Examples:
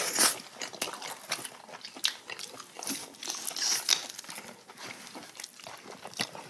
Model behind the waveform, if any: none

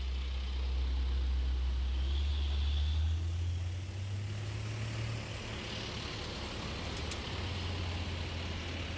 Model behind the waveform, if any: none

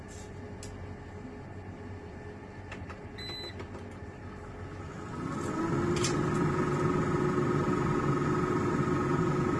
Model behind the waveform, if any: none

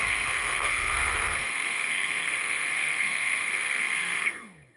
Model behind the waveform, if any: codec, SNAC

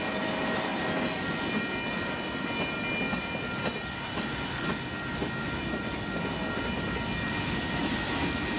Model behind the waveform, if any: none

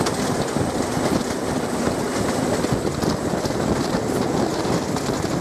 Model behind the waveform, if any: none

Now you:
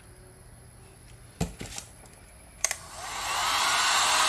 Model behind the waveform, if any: none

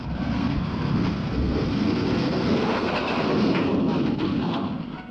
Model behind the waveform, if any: codec, SNAC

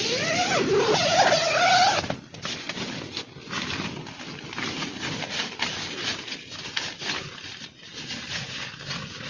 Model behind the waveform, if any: none